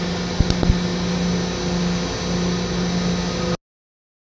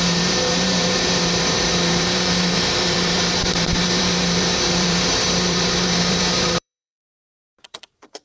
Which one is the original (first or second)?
first